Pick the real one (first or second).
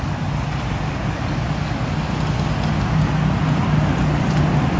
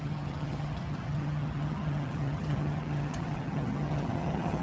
first